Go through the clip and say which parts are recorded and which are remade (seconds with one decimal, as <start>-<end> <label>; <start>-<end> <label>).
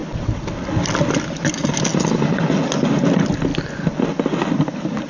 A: 0.0-5.1 recorded